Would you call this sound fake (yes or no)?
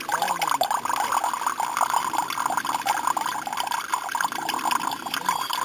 no